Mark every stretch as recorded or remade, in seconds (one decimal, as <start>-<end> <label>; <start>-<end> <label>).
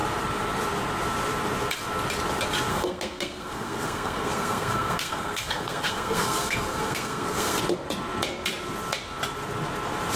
0.0-2.7 recorded; 2.7-7.6 remade; 7.6-10.2 recorded